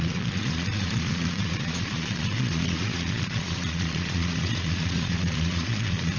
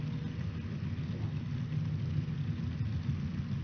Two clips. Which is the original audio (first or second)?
second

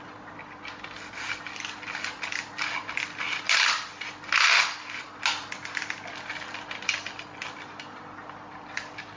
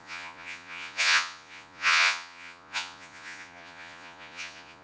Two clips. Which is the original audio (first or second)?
first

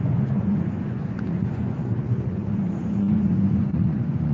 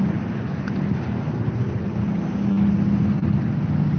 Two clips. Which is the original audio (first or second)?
second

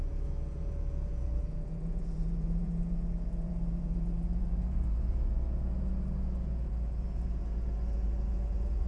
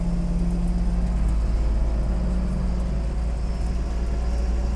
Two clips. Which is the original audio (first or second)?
second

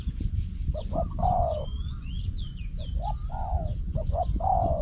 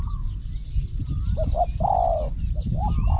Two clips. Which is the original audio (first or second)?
second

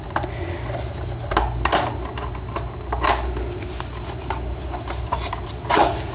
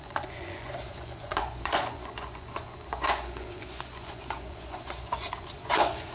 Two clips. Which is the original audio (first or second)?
first